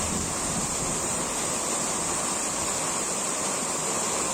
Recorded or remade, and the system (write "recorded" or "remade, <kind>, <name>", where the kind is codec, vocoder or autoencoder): recorded